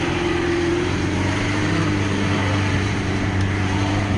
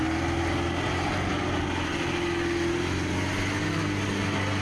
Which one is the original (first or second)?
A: second